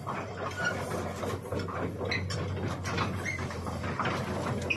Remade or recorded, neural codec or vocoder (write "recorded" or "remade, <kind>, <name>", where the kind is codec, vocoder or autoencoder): recorded